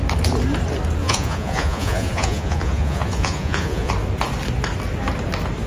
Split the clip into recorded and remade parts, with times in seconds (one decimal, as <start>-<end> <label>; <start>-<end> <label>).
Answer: 0.0-1.0 recorded; 1.0-3.9 remade; 3.9-5.7 recorded